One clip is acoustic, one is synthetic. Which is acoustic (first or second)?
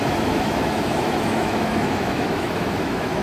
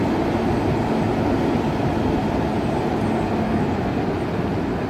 second